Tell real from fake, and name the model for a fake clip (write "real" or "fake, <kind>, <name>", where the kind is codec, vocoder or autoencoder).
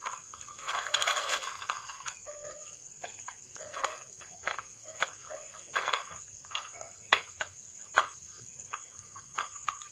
fake, codec, SNAC